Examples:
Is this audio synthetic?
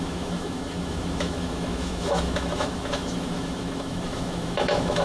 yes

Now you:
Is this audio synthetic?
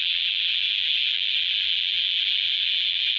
yes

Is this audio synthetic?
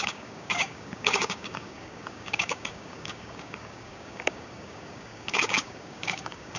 yes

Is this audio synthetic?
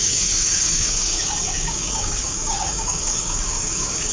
yes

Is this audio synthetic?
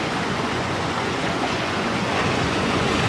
yes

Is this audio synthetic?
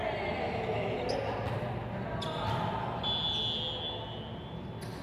no